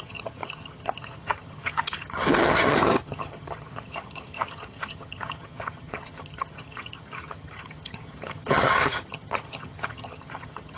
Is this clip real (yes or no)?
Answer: no